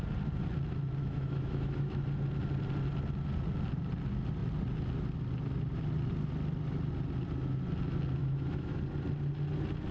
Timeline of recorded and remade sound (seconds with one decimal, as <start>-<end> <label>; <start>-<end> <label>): 0.0-1.0 recorded; 1.0-2.0 remade; 2.0-8.2 recorded; 8.2-8.8 remade; 8.8-9.9 recorded